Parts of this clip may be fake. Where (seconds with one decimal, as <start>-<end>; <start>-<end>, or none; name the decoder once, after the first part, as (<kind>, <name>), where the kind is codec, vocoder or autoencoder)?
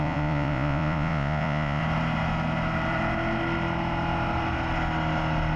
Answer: 0.0-1.8 (vocoder, Vocos)